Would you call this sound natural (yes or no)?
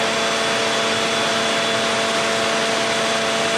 yes